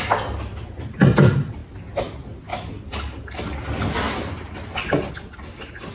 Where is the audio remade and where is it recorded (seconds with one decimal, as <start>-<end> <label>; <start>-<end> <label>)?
0.0-5.9 recorded